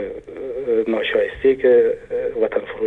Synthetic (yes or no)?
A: no